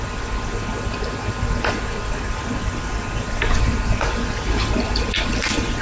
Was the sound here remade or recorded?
recorded